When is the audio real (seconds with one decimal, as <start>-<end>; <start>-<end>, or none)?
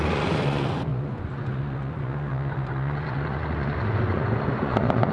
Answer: none